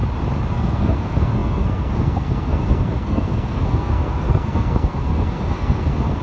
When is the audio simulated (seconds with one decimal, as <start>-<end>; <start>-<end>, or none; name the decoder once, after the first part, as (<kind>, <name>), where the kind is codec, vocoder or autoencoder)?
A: 0.5-6.2 (codec, SNAC)